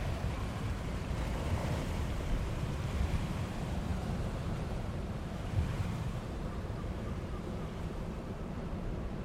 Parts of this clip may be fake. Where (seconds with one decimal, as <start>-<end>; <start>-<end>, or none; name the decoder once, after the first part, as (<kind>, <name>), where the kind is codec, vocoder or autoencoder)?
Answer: 0.0-9.2 (vocoder, BigVGAN v2)